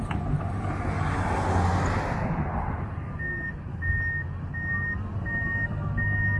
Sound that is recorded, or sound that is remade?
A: recorded